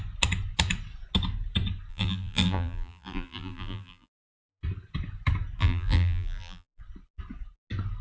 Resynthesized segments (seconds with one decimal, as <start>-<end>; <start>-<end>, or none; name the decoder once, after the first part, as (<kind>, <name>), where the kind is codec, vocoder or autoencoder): 1.9-4.6 (vocoder, BigVGAN v2); 5.6-6.8